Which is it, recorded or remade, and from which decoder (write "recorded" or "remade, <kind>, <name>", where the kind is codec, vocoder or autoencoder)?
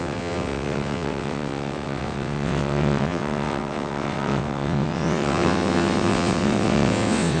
remade, vocoder, WaveNeXt